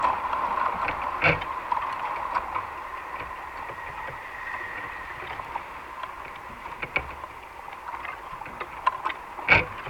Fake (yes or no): no